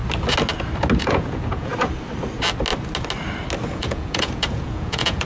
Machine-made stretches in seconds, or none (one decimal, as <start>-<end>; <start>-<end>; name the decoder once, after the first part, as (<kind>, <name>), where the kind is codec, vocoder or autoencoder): 1.0-1.7 (vocoder, Vocos); 3.7-5.2